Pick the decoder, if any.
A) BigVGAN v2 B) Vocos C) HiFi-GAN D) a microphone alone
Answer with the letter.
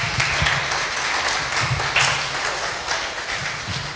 D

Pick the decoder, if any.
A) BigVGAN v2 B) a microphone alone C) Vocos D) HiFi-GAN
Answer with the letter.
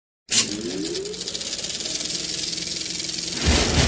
B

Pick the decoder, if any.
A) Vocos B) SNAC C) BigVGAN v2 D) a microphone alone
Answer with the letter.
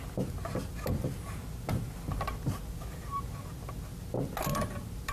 D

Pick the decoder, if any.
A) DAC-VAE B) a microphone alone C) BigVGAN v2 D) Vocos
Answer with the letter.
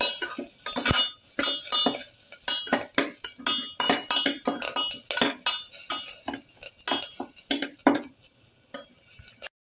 B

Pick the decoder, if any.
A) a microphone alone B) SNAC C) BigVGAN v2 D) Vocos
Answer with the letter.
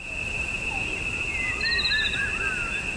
A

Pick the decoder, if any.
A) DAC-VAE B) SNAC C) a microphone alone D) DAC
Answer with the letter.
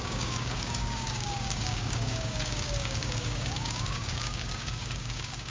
D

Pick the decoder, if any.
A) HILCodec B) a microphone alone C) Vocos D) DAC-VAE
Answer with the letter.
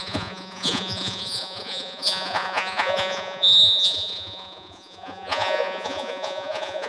C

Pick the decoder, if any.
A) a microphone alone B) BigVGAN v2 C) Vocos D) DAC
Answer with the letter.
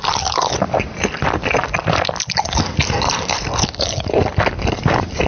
A